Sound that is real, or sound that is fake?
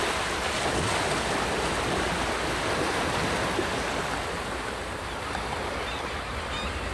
real